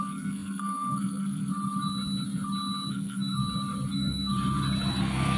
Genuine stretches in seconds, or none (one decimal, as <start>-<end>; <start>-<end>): 1.5-2.9; 3.4-3.9; 4.3-5.0